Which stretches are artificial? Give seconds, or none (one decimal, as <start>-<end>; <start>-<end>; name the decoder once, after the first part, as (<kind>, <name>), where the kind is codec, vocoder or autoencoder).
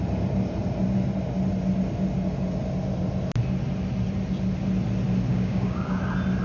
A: 5.3-6.0 (codec, DAC)